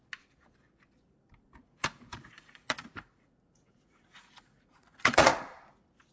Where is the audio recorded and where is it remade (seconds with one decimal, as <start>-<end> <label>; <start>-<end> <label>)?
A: 0.0-1.6 recorded; 1.6-5.3 remade; 5.3-6.1 recorded